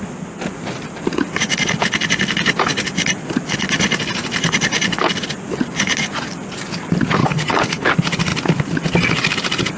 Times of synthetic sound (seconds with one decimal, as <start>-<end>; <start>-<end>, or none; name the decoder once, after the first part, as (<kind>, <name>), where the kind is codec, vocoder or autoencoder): 7.2-7.9 (codec, HILCodec)